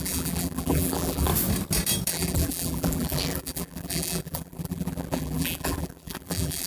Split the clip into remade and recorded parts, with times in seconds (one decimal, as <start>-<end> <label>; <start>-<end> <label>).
0.0-1.3 remade; 1.3-2.1 recorded; 2.1-6.7 remade